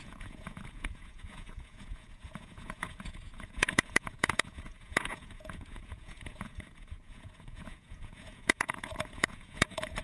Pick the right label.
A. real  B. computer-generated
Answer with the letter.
B